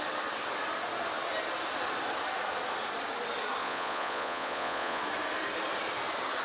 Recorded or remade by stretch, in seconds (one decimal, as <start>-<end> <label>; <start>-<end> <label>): 0.0-3.6 recorded; 3.6-5.0 remade; 5.0-6.4 recorded